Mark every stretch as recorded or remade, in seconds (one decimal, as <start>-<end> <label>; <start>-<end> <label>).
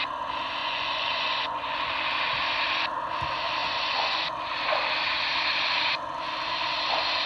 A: 0.0-0.6 recorded; 0.6-1.9 remade; 1.9-3.6 recorded; 3.6-4.2 remade; 4.2-7.3 recorded